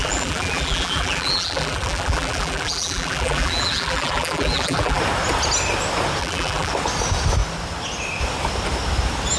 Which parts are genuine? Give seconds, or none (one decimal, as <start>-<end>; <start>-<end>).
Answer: 5.0-6.2; 6.7-9.4